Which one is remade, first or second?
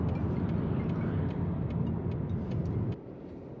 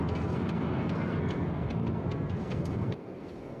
second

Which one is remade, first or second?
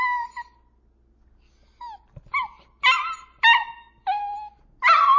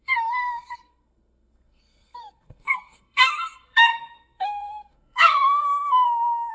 second